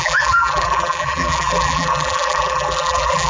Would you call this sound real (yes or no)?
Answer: no